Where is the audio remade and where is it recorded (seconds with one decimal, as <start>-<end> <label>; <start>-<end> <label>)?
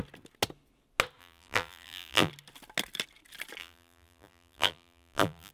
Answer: 0.0-1.2 recorded; 1.2-2.3 remade; 2.3-3.6 recorded; 3.6-5.5 remade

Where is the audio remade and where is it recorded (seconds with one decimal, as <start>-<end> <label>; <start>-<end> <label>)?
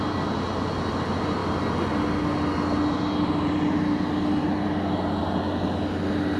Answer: 0.0-6.4 recorded